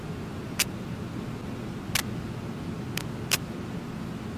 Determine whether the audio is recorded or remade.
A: recorded